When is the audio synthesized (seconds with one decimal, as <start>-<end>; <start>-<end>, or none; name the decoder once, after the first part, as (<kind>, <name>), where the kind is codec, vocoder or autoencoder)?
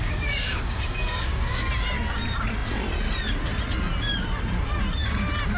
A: 0.0-1.7 (codec, DAC)